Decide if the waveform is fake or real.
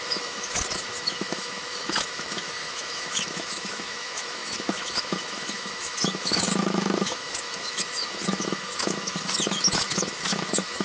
fake